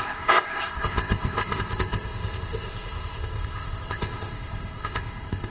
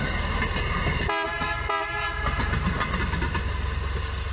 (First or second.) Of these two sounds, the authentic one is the second